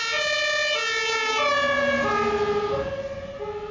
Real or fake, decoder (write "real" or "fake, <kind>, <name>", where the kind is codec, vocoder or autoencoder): real